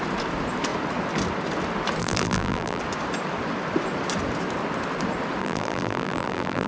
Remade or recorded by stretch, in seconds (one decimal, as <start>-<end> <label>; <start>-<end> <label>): 0.0-2.0 recorded; 2.0-2.8 remade; 2.8-5.4 recorded; 5.4-6.7 remade